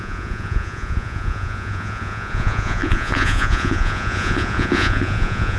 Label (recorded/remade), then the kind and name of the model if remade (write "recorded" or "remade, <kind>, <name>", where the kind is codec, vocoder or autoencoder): remade, vocoder, Vocos